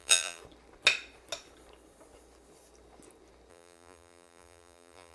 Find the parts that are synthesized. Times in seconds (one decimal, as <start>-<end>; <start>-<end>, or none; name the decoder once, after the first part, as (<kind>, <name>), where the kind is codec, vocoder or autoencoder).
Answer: 0.0-0.4 (vocoder, BigVGAN v2); 3.5-5.1